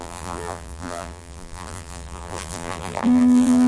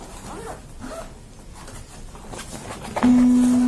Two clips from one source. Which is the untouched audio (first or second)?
second